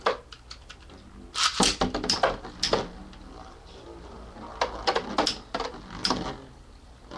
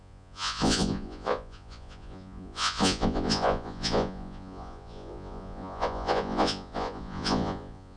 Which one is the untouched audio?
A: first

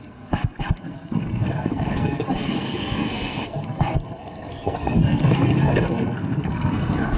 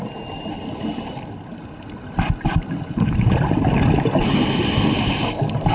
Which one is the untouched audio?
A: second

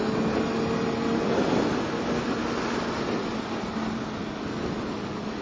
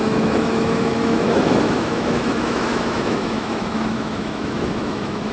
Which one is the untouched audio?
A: first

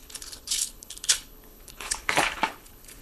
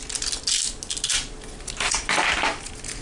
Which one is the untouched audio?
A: second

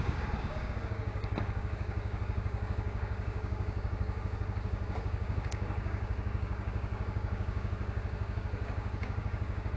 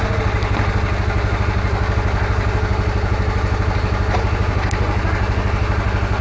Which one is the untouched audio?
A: second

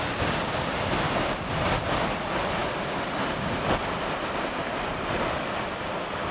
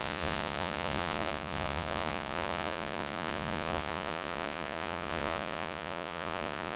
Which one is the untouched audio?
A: first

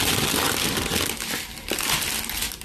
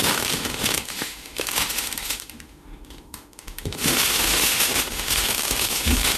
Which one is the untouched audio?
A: first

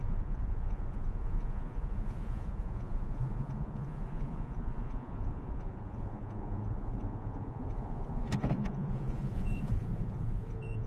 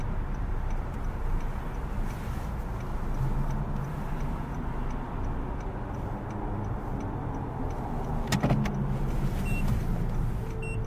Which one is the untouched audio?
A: second